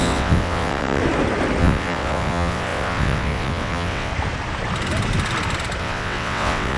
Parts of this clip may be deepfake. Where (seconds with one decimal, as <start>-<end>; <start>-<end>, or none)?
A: 0.0-1.0; 1.6-4.1; 5.8-6.8